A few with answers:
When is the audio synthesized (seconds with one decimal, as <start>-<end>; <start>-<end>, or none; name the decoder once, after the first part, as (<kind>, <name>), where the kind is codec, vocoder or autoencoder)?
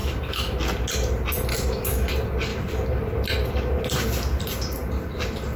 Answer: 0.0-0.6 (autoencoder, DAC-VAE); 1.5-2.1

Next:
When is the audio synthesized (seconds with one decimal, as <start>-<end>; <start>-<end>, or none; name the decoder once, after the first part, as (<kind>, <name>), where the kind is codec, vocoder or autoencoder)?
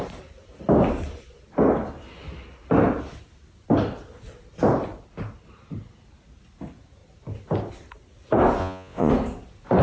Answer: 8.6-9.1 (vocoder, Vocos)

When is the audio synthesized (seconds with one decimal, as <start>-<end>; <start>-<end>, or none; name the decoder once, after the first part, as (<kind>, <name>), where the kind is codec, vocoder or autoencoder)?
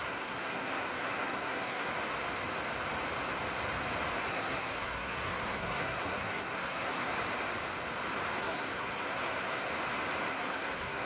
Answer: 0.0-1.9 (codec, SNAC); 4.3-7.1; 8.4-9.7; 10.3-11.1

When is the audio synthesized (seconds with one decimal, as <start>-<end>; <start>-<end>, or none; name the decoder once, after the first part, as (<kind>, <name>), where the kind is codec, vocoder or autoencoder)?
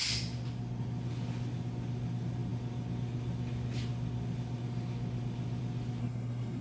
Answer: 6.0-6.6 (codec, SNAC)